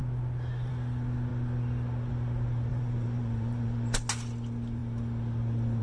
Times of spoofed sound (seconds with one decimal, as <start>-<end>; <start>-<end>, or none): 2.7-4.1